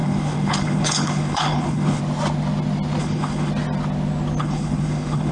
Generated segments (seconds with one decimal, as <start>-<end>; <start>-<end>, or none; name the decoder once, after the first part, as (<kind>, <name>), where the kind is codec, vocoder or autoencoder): 0.0-2.0 (codec, HILCodec); 3.0-3.5; 4.4-5.3